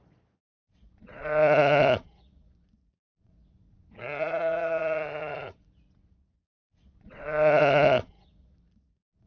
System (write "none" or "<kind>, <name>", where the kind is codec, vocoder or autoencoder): vocoder, Vocos